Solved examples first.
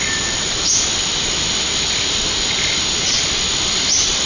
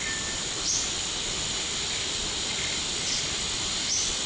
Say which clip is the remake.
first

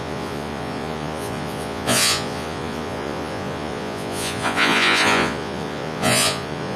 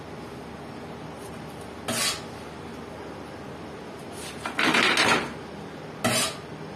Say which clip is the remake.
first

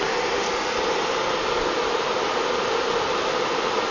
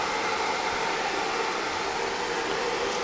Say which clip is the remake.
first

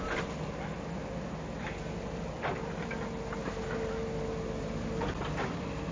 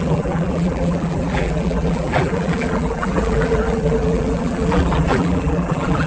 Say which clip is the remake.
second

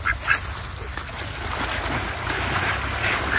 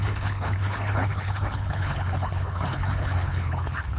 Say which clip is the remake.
second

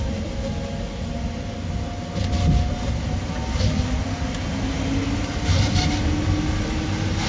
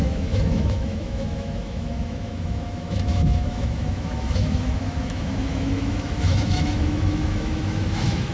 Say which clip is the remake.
second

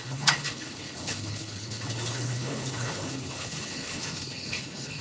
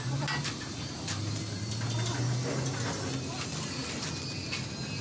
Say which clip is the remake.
first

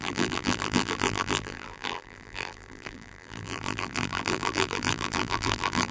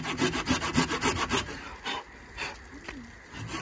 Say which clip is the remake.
first